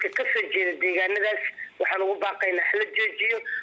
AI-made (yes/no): no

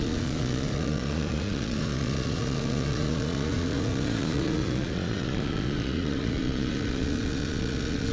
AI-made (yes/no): yes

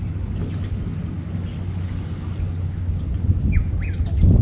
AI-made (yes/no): no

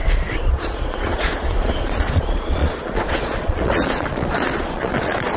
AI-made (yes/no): yes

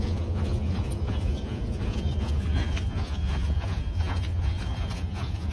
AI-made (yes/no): yes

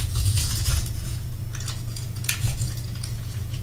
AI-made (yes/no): yes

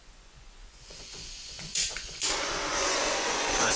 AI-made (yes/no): yes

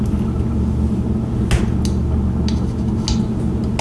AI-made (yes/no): no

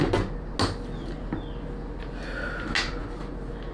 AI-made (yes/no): no